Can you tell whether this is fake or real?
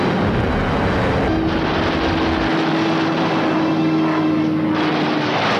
real